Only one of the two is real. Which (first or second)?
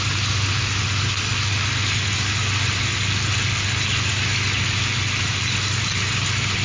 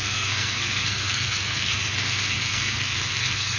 first